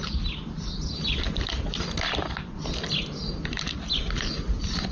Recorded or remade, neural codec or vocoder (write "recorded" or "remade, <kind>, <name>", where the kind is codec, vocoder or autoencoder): recorded